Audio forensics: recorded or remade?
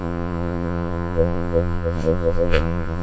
remade